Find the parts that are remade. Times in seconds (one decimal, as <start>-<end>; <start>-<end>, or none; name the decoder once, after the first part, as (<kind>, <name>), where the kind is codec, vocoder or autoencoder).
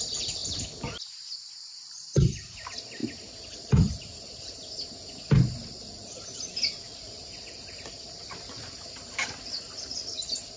none